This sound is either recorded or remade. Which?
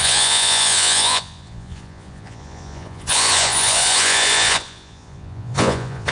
remade